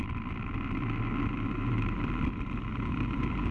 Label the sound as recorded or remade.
remade